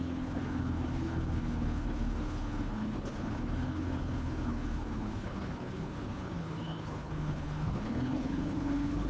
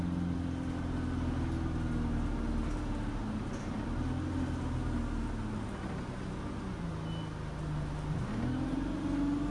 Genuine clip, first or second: second